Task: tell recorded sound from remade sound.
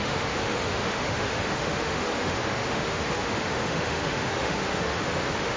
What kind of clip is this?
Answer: remade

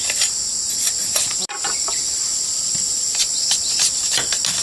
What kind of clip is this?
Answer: recorded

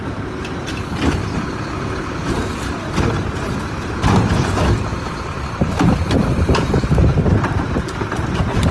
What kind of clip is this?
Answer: recorded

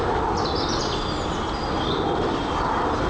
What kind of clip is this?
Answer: recorded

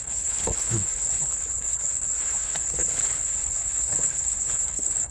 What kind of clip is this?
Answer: remade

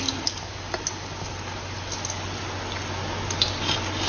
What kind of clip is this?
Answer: recorded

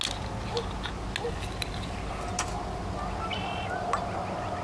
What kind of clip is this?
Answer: recorded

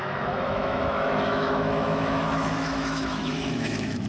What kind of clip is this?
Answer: remade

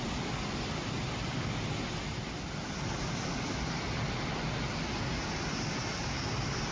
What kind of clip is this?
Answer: recorded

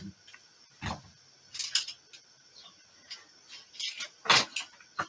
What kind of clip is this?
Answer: recorded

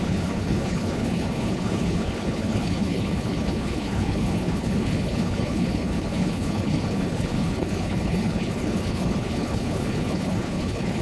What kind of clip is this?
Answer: remade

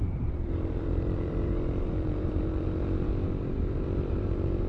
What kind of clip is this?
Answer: remade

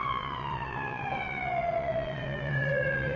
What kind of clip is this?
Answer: remade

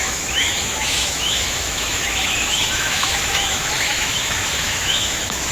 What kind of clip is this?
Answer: remade